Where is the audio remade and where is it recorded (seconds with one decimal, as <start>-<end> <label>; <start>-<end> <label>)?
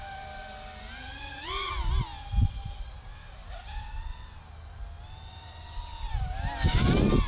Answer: 0.0-7.3 recorded